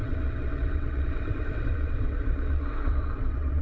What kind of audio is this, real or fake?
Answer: fake